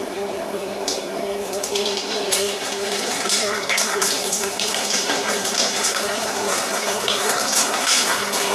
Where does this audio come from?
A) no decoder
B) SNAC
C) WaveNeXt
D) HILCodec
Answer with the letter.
B